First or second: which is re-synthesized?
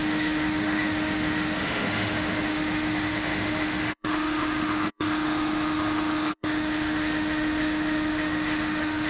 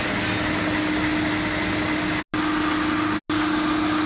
first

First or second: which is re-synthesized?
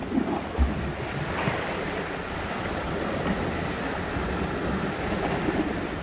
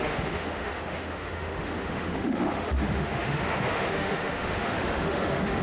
second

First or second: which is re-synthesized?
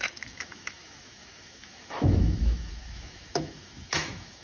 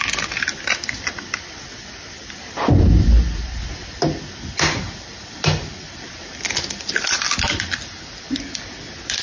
first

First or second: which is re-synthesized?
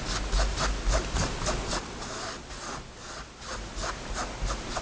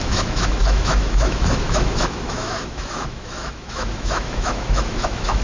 second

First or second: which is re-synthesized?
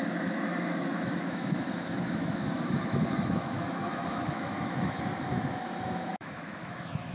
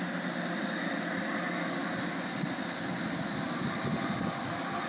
first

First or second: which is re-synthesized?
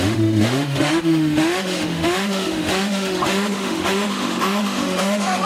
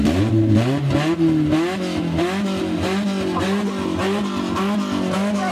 first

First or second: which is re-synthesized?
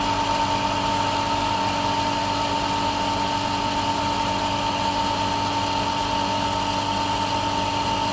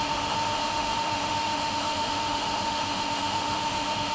second